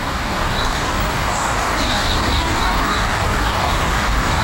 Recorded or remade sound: remade